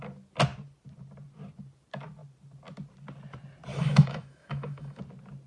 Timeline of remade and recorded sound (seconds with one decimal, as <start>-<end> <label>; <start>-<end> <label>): 0.0-3.7 recorded; 3.7-5.0 remade; 5.0-5.5 recorded